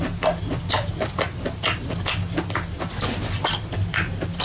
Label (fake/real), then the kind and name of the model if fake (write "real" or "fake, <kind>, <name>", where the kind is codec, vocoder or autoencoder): real